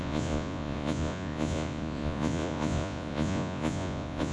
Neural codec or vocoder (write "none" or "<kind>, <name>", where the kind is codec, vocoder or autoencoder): vocoder, Vocos